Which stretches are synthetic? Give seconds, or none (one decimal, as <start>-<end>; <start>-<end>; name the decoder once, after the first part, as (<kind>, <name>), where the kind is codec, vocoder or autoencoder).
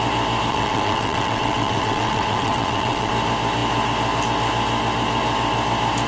0.5-3.1 (vocoder, WaveNeXt)